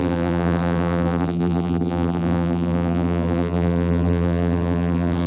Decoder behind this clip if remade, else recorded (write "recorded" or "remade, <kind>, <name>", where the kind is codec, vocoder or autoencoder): remade, vocoder, BigVGAN v2